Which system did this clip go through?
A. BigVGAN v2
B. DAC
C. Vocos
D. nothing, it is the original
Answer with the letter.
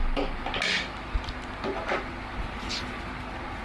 D